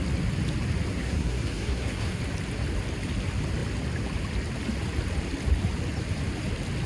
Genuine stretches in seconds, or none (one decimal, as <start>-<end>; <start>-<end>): 0.0-0.9; 2.2-6.9